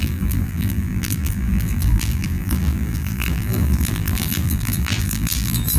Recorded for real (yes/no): no